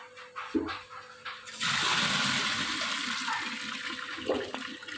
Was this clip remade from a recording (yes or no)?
no